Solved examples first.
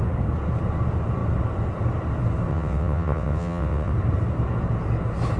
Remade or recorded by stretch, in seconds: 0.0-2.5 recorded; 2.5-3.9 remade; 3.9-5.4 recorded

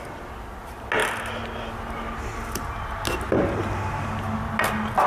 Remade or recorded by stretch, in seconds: 0.0-5.1 recorded